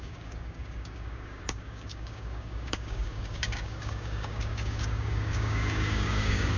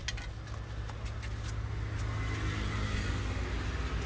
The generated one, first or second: first